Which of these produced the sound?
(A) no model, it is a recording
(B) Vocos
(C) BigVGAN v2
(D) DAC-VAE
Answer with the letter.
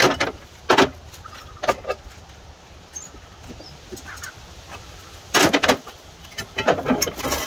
A